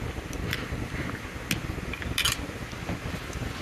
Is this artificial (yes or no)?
no